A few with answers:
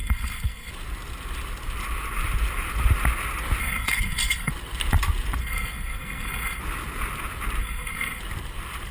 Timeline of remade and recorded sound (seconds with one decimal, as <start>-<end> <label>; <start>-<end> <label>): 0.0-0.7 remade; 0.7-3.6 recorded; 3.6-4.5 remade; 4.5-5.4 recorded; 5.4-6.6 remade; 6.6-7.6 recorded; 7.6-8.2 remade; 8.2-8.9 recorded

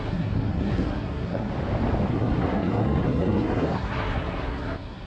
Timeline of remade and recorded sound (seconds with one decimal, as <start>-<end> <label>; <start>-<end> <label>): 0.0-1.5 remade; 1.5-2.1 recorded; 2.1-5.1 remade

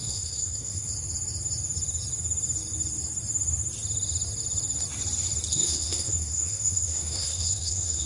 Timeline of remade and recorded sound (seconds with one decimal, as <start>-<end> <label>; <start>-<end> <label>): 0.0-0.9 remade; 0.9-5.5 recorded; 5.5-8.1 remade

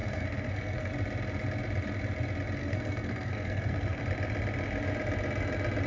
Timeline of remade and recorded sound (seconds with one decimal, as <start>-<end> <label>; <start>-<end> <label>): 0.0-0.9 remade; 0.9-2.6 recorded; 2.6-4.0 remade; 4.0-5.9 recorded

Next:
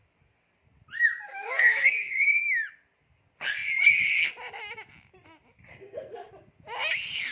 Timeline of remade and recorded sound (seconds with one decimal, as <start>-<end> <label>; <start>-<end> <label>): 0.0-1.3 recorded; 1.3-2.4 remade; 2.4-5.7 recorded; 5.7-6.3 remade; 6.3-7.3 recorded